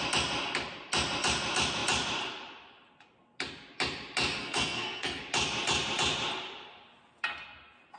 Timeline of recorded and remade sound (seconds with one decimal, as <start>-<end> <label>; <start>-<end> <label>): 0.0-4.4 recorded; 4.4-5.2 remade; 5.2-8.0 recorded

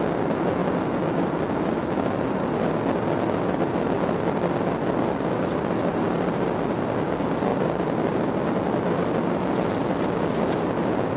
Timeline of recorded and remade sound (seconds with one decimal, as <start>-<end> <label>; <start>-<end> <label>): 0.0-11.2 recorded

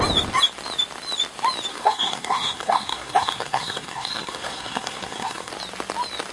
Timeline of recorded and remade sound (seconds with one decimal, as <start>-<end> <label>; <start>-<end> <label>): 0.0-1.7 recorded; 1.7-5.5 remade; 5.5-6.3 recorded

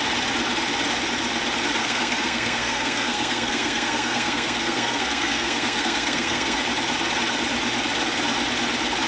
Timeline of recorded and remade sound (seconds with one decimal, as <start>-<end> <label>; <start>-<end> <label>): 0.0-1.8 recorded; 1.8-6.6 remade; 6.6-9.1 recorded